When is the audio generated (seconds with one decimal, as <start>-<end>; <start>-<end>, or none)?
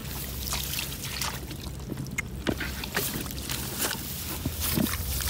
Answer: none